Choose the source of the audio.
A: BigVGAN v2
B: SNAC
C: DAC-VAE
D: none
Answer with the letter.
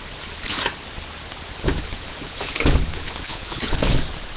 D